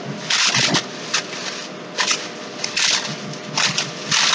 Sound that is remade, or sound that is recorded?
remade